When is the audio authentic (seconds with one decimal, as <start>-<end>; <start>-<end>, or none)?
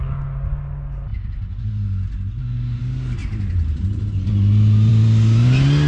0.0-3.2; 4.0-5.9